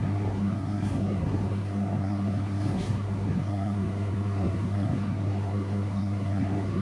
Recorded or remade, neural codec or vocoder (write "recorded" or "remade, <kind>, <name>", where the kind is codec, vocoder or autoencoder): remade, codec, SNAC